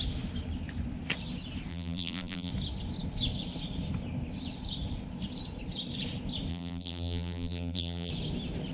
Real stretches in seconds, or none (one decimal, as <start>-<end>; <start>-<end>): 0.0-1.7; 2.5-6.5; 8.1-8.7